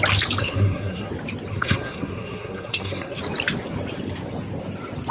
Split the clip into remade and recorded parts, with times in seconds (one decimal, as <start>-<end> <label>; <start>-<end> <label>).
0.0-0.4 recorded; 0.4-1.1 remade; 1.1-1.5 recorded; 1.5-3.2 remade; 3.2-5.1 recorded